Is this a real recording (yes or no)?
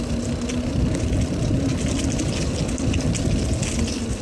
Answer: yes